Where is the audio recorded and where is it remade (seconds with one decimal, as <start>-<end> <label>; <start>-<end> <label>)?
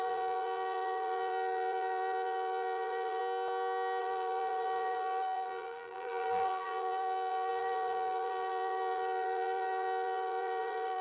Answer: 0.0-3.2 remade; 3.2-4.0 recorded; 4.0-11.0 remade